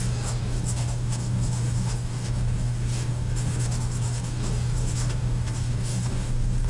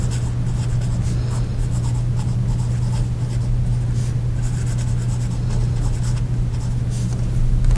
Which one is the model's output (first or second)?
first